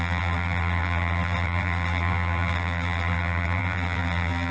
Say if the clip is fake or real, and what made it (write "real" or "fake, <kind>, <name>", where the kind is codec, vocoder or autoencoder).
fake, vocoder, BigVGAN v2